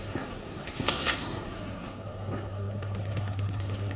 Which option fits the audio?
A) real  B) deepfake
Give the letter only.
B